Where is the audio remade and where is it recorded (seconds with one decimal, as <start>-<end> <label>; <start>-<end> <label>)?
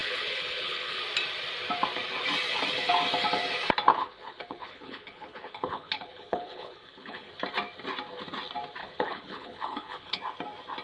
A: 0.0-1.0 remade; 1.0-3.9 recorded; 3.9-7.3 remade; 7.3-8.8 recorded; 8.8-10.2 remade; 10.2-10.8 recorded